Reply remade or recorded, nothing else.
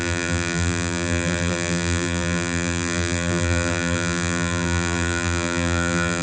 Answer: remade